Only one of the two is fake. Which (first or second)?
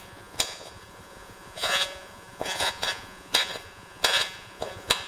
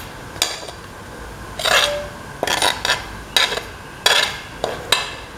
first